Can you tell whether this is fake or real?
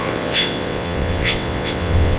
fake